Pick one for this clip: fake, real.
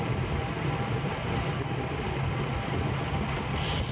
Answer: real